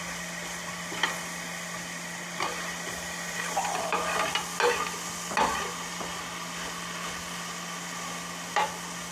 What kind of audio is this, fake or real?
real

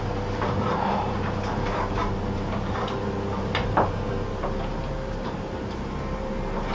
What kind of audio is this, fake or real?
fake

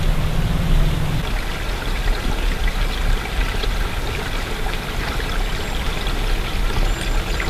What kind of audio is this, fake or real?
real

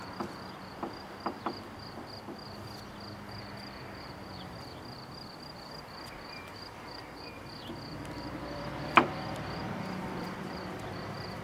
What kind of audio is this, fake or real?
fake